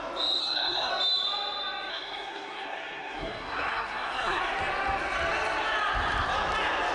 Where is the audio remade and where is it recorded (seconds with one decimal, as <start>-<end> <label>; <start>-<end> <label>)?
0.0-0.4 recorded; 0.4-0.9 remade; 0.9-1.9 recorded; 1.9-4.4 remade; 4.4-6.9 recorded